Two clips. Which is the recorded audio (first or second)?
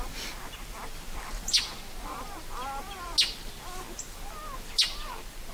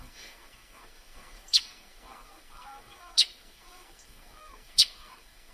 first